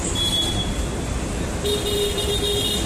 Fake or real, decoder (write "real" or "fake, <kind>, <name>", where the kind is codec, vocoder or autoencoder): real